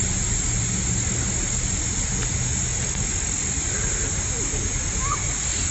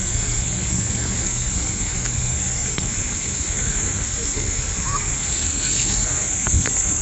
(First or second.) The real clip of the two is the first